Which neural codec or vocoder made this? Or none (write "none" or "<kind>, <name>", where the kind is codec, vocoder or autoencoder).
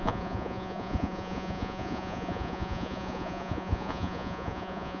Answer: vocoder, Vocos